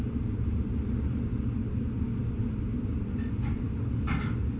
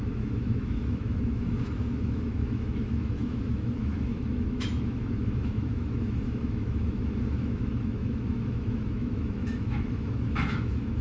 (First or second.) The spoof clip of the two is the second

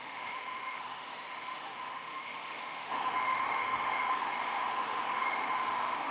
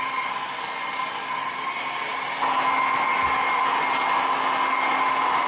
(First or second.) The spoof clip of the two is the first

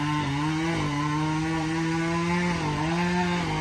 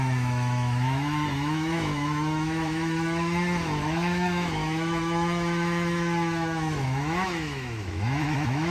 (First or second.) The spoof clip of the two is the second